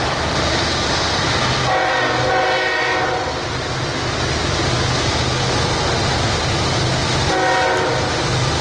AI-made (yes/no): no